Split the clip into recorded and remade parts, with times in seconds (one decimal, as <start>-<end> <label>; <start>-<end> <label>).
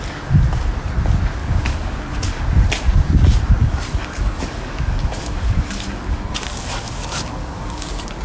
0.0-1.4 recorded; 1.4-2.4 remade; 2.4-3.6 recorded; 3.6-8.2 remade